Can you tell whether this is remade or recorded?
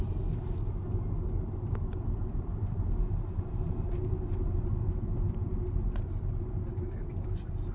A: recorded